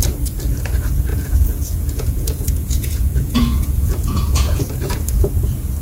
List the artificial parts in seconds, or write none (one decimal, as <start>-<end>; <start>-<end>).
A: 1.1-4.6